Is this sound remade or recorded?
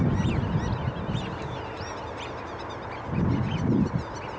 recorded